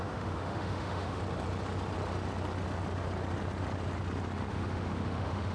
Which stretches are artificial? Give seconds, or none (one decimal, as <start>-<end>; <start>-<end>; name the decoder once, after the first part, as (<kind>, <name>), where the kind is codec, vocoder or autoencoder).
0.0-1.2 (autoencoder, DAC-VAE); 4.5-5.5